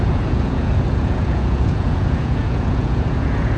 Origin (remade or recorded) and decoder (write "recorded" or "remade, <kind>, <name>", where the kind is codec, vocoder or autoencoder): remade, vocoder, Vocos